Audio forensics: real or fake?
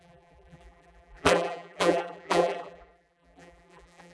fake